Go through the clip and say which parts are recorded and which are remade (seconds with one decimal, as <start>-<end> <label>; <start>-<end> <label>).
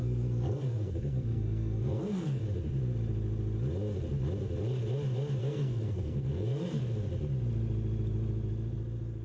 0.0-2.4 remade; 2.4-5.4 recorded; 5.4-6.8 remade; 6.8-9.2 recorded